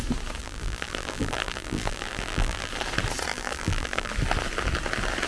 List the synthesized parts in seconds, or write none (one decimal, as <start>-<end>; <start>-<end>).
0.4-2.7; 3.3-4.1